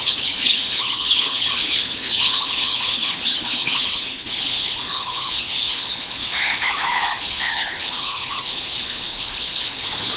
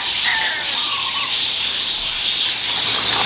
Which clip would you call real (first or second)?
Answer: second